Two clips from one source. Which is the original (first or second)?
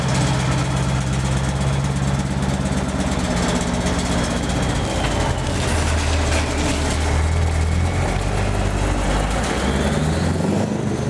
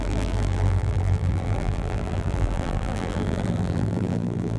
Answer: first